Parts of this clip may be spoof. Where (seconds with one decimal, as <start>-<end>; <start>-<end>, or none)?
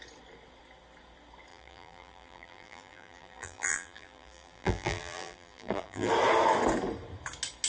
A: 1.5-6.1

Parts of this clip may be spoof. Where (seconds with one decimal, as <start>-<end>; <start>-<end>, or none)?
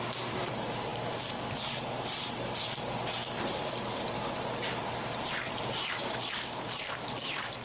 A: 0.0-7.6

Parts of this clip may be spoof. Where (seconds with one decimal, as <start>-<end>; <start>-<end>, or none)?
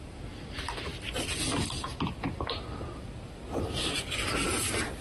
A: 0.9-1.5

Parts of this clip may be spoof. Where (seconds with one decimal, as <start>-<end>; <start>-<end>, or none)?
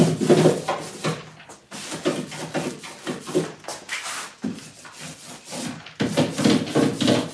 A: 3.7-4.2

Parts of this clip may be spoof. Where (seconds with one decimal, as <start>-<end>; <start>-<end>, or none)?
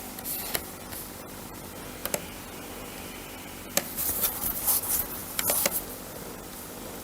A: 4.0-4.7